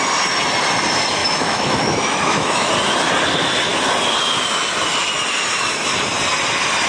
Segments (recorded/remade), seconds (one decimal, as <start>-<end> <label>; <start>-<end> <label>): 0.0-1.2 recorded; 1.2-2.7 remade; 2.7-6.9 recorded